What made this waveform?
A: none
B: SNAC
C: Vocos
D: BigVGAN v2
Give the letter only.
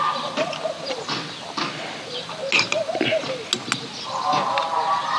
A